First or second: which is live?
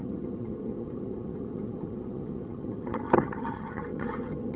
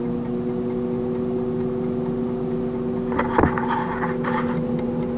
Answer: second